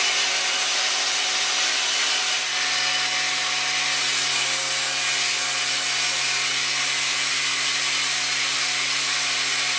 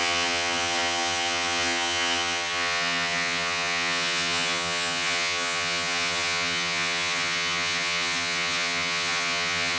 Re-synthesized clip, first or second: second